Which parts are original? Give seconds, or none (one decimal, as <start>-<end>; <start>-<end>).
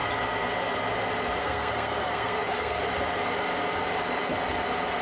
0.0-1.4; 2.8-5.0